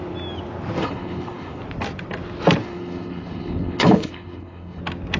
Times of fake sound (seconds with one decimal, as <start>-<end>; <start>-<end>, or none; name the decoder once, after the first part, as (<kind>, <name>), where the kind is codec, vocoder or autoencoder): 0.8-1.6 (codec, HILCodec); 2.6-4.8